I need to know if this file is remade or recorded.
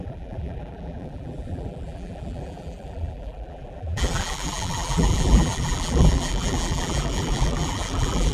remade